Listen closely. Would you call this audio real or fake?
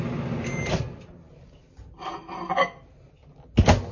real